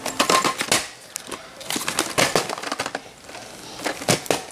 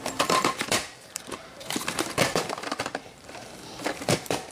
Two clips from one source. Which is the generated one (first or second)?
second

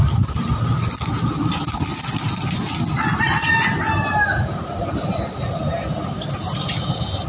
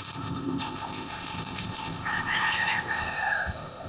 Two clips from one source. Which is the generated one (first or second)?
second